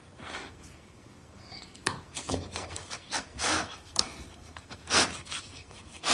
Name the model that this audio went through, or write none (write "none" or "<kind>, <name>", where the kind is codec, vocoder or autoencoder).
codec, SNAC